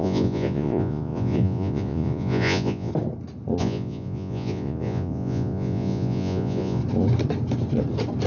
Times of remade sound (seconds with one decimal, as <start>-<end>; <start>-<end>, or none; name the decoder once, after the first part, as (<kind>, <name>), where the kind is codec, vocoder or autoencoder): 0.0-2.9 (vocoder, Vocos); 3.6-6.8